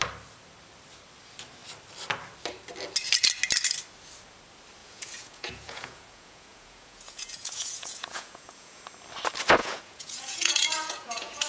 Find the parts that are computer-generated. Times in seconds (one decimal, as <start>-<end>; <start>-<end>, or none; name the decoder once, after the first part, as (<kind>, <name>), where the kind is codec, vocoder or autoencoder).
4.8-8.8 (vocoder, Vocos); 9.6-11.5